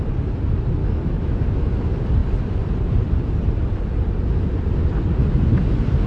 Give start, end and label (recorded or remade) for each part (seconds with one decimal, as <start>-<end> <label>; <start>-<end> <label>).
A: 0.0-0.8 recorded; 0.8-1.5 remade; 1.5-6.1 recorded

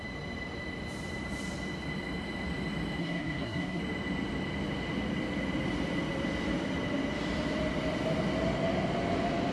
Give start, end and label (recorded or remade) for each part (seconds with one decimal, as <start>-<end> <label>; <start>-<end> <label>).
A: 0.0-3.0 recorded; 3.0-3.8 remade; 3.8-9.5 recorded

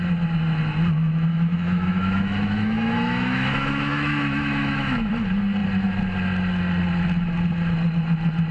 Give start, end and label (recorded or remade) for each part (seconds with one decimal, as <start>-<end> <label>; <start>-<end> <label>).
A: 0.0-1.3 recorded; 1.3-5.1 remade; 5.1-8.5 recorded

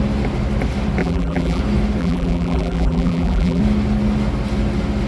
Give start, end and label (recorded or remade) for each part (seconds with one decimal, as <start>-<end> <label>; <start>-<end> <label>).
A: 0.0-1.0 recorded; 1.0-1.6 remade; 1.6-2.0 recorded; 2.0-3.6 remade; 3.6-5.1 recorded

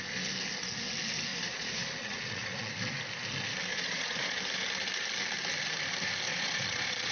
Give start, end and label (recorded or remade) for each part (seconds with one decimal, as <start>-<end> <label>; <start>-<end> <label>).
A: 0.0-1.3 recorded; 1.3-2.7 remade; 2.7-3.7 recorded; 3.7-4.4 remade; 4.4-6.3 recorded; 6.3-7.1 remade

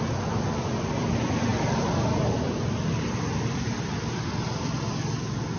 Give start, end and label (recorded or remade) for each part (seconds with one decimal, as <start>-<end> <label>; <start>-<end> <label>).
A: 0.0-5.6 recorded

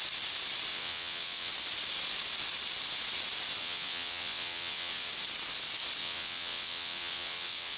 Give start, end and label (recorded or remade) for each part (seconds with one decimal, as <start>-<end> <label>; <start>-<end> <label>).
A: 0.0-0.7 recorded; 0.7-1.5 remade; 1.5-3.6 recorded; 3.6-5.1 remade; 5.1-6.0 recorded; 6.0-7.8 remade